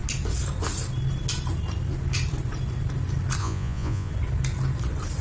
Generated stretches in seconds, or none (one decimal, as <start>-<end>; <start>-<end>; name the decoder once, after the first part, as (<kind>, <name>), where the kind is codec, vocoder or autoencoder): 3.4-4.1 (vocoder, Vocos)